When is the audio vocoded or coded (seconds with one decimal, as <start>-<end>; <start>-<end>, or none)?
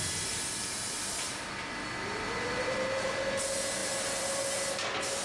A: none